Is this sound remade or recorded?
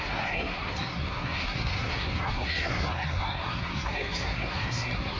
remade